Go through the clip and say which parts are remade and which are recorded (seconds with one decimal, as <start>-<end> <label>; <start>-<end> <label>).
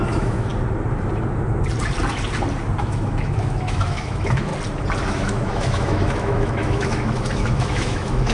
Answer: 0.0-0.5 remade; 0.5-2.8 recorded; 2.8-4.5 remade; 4.5-5.1 recorded; 5.1-8.3 remade